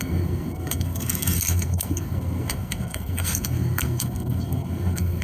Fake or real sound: fake